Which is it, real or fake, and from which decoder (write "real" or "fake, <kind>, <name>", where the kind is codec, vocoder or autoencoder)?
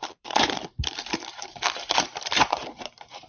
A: fake, vocoder, BigVGAN v2